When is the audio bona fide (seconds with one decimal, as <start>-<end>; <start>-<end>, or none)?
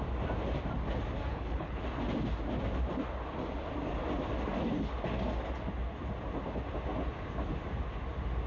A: 0.0-1.3; 1.8-8.5